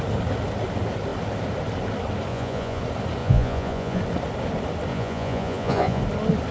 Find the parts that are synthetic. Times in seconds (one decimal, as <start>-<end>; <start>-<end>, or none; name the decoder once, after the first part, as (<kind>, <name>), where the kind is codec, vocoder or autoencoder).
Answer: 2.3-2.8 (vocoder, Vocos); 3.2-4.0; 4.9-6.0